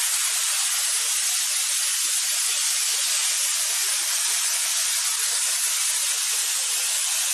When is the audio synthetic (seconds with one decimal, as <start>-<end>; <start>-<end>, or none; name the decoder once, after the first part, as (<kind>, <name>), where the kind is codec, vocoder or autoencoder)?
5.1-6.4 (vocoder, BigVGAN v2)